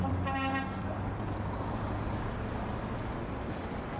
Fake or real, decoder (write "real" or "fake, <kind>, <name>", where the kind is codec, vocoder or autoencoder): fake, vocoder, BigVGAN v2